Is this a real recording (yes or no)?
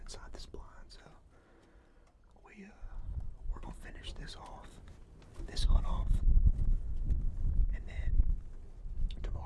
yes